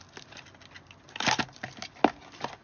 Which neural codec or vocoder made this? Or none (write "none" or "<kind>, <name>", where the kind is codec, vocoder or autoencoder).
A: none